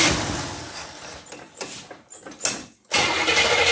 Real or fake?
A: real